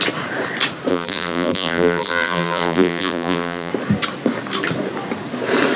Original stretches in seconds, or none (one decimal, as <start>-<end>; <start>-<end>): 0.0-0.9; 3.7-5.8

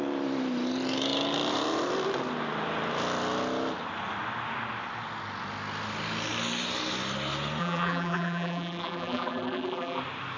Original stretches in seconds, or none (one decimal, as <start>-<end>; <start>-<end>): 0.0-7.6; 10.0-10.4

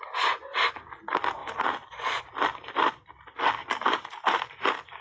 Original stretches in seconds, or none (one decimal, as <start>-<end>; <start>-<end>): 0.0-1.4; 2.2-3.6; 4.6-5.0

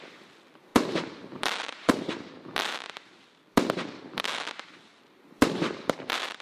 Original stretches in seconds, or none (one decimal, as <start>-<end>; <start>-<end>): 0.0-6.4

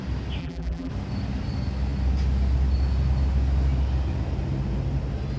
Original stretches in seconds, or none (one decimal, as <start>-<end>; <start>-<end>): 0.0-0.4; 0.9-5.4

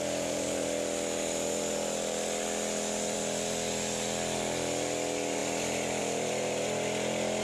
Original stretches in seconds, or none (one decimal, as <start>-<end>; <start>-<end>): 0.0-7.4

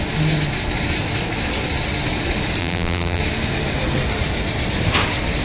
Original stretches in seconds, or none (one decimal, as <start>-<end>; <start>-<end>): 0.0-2.6; 3.2-5.4

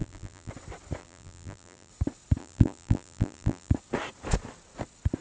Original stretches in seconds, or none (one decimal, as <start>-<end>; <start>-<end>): 0.5-1.0; 1.9-2.4; 3.7-5.2